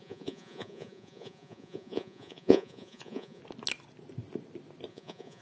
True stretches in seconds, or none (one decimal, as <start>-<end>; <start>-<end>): 3.4-4.9